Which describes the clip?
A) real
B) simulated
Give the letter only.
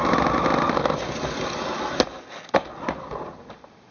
A